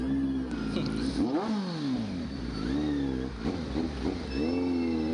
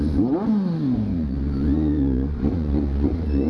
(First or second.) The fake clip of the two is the second